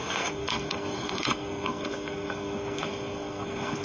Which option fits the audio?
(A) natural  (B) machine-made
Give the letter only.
B